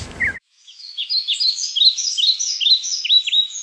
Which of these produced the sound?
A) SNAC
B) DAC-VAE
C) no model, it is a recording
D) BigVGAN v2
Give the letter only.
B